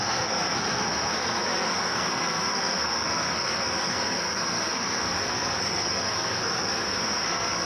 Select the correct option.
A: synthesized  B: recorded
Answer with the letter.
A